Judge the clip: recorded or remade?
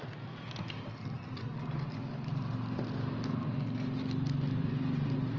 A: recorded